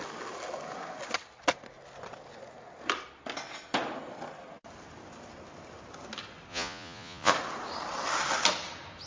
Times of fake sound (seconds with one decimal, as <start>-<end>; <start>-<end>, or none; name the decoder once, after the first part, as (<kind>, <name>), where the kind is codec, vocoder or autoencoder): 6.5-7.3 (vocoder, Vocos)